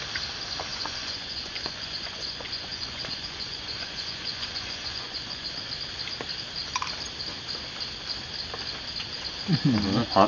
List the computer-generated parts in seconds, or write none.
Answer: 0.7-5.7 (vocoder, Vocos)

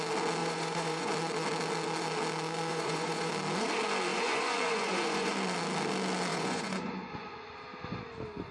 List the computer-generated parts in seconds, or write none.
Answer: 0.4-1.1 (vocoder, Vocos); 2.7-3.3; 4.1-5.3; 6.3-7.6

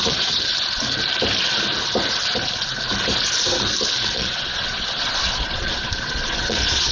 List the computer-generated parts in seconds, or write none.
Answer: 0.0-0.5 (vocoder, Vocos); 4.1-6.9

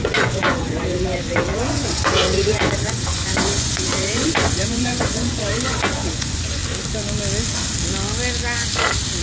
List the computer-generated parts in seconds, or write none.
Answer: 0.0-6.6 (vocoder, Vocos)